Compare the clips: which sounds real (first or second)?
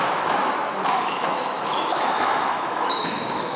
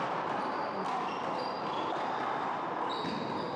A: second